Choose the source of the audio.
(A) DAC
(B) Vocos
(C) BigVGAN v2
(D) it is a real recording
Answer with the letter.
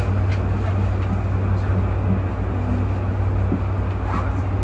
D